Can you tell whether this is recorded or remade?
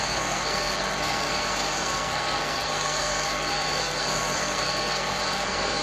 remade